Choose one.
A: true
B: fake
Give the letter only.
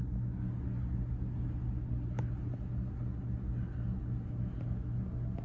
A